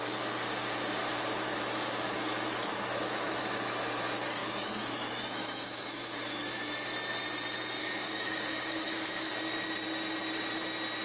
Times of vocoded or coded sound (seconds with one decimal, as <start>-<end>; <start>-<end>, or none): 1.0-3.4; 4.4-6.7; 7.8-9.3